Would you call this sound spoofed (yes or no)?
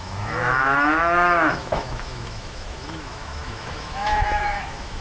yes